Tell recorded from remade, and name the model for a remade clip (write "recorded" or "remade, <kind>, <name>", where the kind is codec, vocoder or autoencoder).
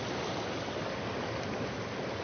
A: recorded